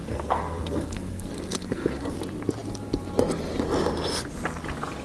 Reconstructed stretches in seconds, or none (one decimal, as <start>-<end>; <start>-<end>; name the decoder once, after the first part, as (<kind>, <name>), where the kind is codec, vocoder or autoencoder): 0.0-2.2 (codec, SNAC)